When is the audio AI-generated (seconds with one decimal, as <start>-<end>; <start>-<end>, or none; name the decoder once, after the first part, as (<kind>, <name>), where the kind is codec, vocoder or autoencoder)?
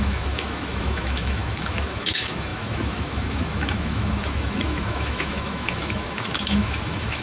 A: 0.0-7.2 (autoencoder, DAC-VAE)